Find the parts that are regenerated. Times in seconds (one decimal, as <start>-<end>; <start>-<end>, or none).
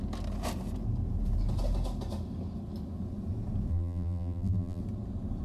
3.7-4.8